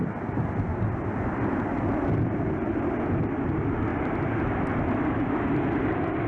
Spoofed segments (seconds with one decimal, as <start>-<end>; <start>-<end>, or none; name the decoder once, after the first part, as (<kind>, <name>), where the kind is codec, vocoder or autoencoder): none